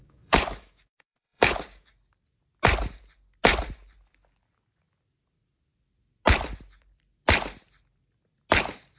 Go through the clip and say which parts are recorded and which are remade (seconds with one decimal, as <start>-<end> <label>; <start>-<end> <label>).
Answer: 0.0-1.9 remade; 1.9-9.0 recorded